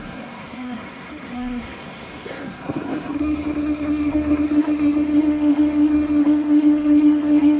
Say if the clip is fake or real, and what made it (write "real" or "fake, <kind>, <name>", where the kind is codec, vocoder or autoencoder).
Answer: fake, codec, SNAC